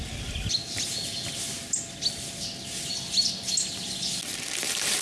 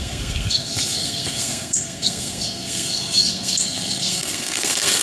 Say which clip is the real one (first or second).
first